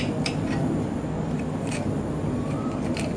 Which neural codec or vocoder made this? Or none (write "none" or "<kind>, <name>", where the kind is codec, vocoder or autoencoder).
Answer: none